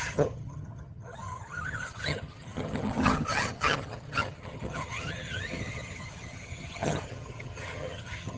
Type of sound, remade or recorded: remade